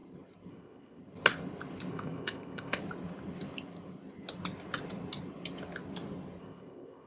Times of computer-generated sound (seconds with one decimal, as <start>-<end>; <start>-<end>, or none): 0.5-1.0; 1.9-2.8; 6.4-7.1